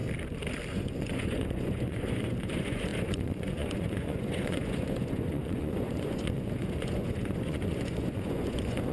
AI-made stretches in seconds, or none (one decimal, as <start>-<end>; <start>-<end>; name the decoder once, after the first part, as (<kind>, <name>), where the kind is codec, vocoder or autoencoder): 0.7-8.9 (vocoder, Vocos)